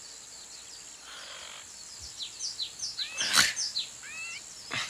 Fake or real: real